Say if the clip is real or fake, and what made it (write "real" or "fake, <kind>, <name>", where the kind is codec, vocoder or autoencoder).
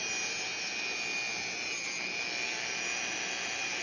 real